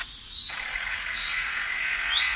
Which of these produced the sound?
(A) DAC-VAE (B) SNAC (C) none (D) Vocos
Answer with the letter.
D